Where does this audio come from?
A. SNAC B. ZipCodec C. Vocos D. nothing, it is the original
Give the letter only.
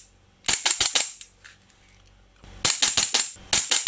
D